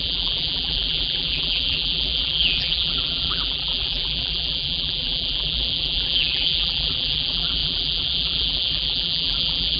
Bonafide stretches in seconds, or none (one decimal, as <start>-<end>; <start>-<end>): none